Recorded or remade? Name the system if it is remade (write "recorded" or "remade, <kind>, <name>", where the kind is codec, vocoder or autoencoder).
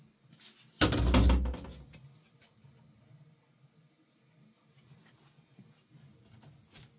recorded